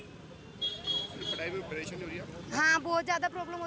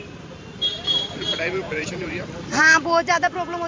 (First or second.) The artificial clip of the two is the second